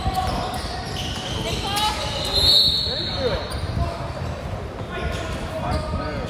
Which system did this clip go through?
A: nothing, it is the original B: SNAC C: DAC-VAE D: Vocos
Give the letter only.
A